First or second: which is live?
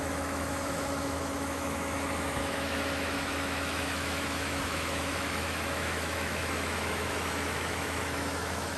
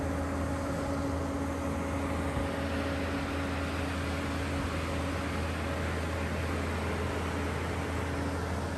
second